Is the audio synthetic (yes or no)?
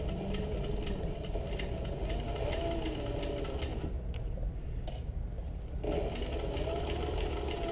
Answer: no